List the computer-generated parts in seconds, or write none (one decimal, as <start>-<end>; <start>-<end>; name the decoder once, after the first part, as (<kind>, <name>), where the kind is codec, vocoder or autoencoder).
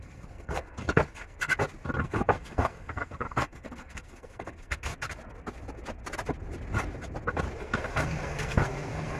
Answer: 0.0-1.5 (codec, SNAC); 2.0-4.9; 7.6-9.2